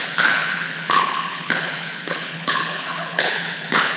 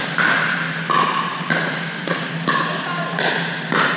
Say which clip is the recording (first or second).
second